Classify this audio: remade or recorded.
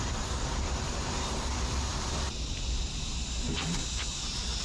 recorded